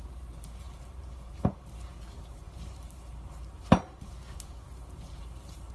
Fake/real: fake